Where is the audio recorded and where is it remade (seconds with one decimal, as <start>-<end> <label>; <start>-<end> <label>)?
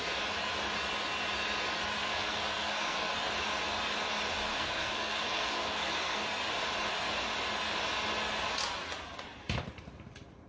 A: 0.0-2.0 recorded; 2.0-3.1 remade; 3.1-4.5 recorded; 4.5-6.2 remade; 6.2-10.5 recorded